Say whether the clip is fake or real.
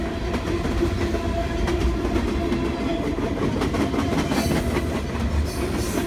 real